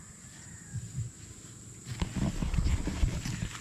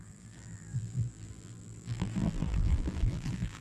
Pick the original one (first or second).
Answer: first